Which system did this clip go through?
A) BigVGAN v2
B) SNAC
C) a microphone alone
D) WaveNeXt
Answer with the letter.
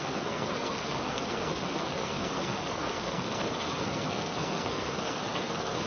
B